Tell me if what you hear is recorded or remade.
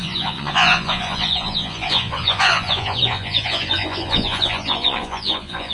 remade